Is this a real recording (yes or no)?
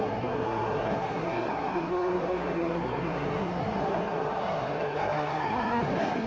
no